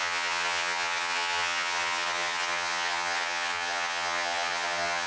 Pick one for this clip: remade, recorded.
remade